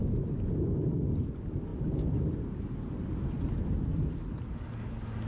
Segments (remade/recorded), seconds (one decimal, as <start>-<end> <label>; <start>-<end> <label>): 0.0-5.3 recorded